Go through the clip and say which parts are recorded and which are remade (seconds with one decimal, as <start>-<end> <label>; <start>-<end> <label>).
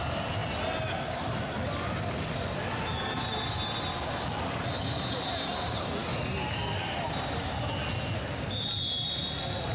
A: 0.0-9.7 recorded